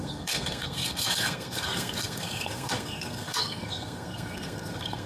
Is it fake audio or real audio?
fake